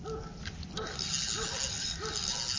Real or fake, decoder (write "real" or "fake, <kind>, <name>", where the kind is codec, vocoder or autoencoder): real